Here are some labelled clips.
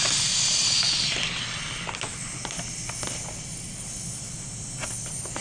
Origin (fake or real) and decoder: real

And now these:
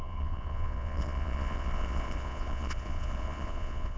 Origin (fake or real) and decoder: fake, vocoder, Vocos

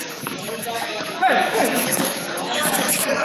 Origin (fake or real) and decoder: fake, codec, DAC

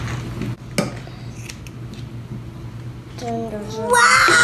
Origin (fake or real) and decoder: real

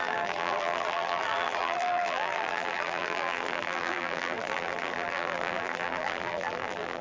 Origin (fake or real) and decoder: fake, vocoder, BigVGAN v2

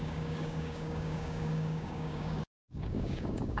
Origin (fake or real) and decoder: fake, codec, DAC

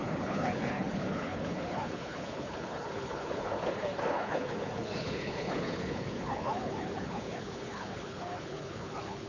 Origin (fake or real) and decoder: fake, codec, HILCodec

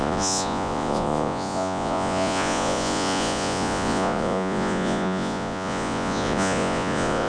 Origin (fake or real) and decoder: fake, vocoder, Vocos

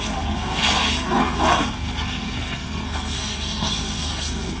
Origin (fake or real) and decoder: fake, codec, SNAC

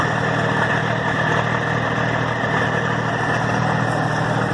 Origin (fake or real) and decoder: real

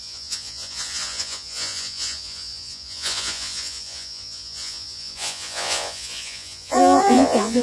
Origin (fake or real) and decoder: fake, vocoder, Vocos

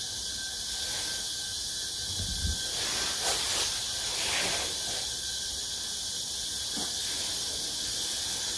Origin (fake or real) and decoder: real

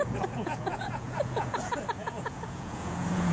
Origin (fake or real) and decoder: fake, vocoder, Vocos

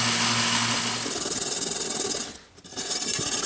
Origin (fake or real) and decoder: real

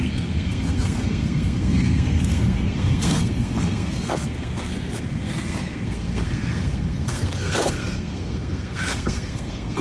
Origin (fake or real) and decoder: fake, codec, SNAC